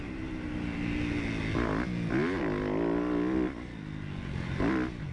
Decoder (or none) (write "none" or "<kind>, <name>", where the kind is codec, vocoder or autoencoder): none